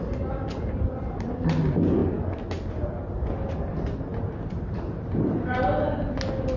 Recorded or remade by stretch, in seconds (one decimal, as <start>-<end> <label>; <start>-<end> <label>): 0.0-6.6 recorded